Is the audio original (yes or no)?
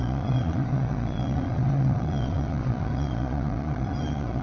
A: no